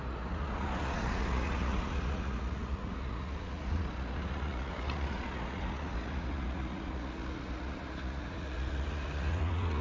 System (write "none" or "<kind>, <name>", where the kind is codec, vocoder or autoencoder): vocoder, Vocos